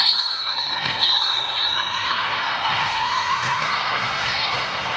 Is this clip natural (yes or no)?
no